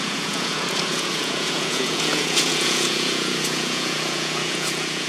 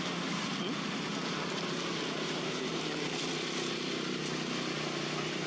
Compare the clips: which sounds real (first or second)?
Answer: second